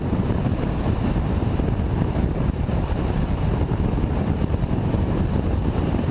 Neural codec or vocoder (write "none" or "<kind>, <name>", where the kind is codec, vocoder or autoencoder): vocoder, BigVGAN v2